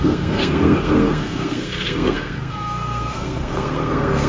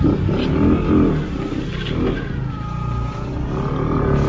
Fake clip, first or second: first